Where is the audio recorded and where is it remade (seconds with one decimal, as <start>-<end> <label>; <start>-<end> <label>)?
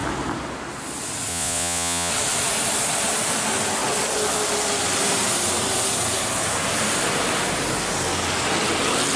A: 0.0-1.3 recorded; 1.3-2.1 remade; 2.1-9.2 recorded